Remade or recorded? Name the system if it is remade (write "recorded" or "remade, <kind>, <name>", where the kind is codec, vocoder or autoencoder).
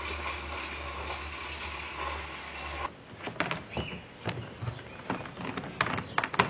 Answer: recorded